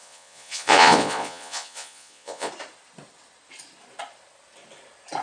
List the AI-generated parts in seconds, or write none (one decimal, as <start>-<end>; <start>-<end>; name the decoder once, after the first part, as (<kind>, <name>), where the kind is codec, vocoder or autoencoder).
0.0-2.5 (vocoder, Vocos)